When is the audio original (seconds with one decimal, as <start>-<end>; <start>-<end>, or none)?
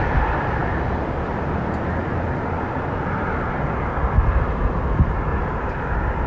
0.0-0.6; 1.6-2.0; 3.2-5.3